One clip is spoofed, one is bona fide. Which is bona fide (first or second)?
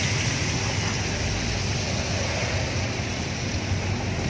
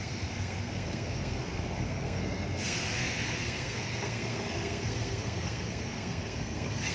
first